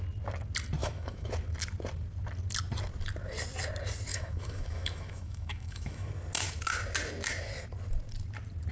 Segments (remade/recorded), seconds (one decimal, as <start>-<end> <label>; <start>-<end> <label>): 0.0-0.8 recorded; 0.8-1.3 remade; 1.3-4.1 recorded; 4.1-6.1 remade; 6.1-8.7 recorded